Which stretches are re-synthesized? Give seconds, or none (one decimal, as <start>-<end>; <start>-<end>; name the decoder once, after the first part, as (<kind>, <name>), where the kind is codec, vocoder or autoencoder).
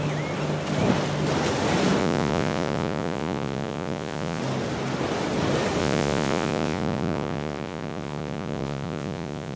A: 2.0-4.4 (vocoder, Vocos); 5.8-9.6